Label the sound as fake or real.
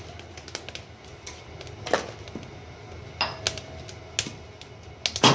real